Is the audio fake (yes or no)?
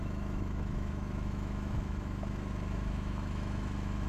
yes